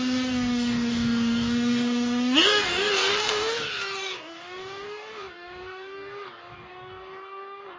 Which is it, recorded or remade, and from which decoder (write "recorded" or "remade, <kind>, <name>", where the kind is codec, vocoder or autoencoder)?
remade, codec, DAC